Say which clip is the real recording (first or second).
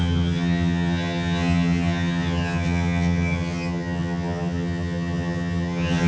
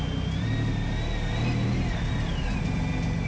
second